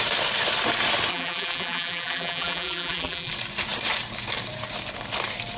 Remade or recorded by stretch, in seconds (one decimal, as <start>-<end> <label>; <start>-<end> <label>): 0.0-1.1 recorded; 1.1-3.3 remade; 3.3-5.6 recorded